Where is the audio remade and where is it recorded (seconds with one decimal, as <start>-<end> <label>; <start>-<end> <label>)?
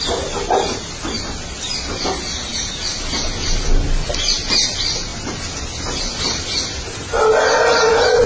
0.0-8.3 recorded